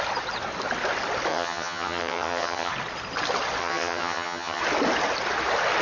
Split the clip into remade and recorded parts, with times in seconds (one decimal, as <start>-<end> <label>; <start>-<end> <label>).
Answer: 0.0-1.3 recorded; 1.3-2.7 remade; 2.7-3.6 recorded; 3.6-4.6 remade; 4.6-5.8 recorded